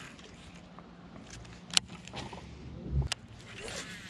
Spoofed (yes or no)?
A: no